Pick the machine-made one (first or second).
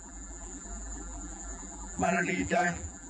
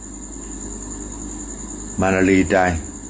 first